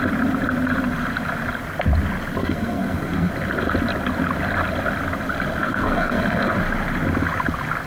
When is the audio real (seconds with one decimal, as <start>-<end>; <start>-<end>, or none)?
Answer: 0.0-2.4; 3.3-5.6; 6.5-7.9